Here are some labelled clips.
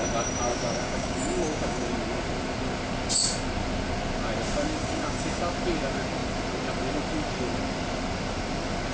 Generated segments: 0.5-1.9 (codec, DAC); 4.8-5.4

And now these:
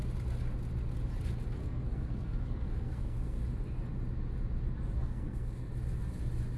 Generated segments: 1.6-3.4 (codec, SNAC); 5.0-5.7